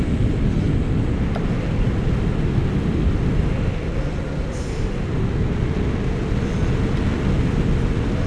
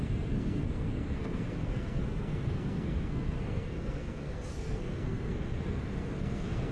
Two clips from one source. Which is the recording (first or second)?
first